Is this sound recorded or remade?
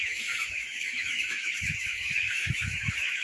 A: remade